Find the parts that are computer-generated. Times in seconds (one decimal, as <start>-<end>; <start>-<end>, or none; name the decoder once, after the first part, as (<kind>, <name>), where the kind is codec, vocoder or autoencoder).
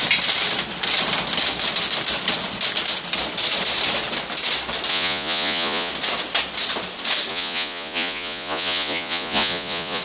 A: 4.9-5.9 (vocoder, Vocos); 7.3-10.0